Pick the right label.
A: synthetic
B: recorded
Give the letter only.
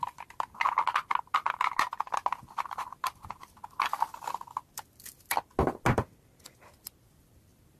B